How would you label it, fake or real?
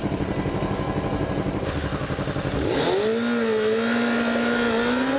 real